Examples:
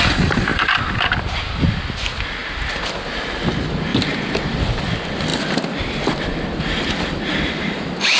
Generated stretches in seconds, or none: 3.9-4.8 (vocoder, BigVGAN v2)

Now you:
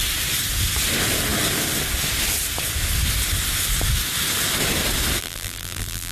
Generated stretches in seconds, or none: 5.2-6.1 (vocoder, BigVGAN v2)

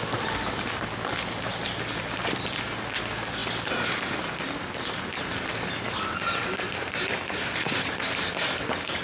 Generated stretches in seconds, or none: none

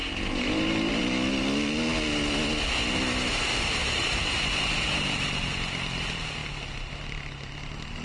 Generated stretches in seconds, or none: 0.0-1.0 (vocoder, BigVGAN v2); 3.5-5.5